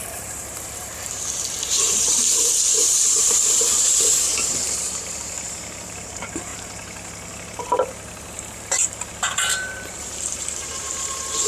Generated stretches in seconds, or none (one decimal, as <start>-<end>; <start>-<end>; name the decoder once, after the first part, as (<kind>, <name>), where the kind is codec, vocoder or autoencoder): 0.0-6.5 (vocoder, BigVGAN v2); 8.6-11.5